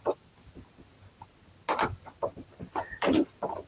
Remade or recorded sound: recorded